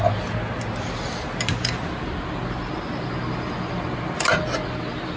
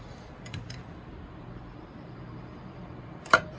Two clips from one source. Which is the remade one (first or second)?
second